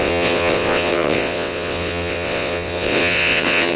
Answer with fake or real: fake